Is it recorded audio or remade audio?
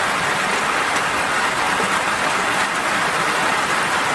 recorded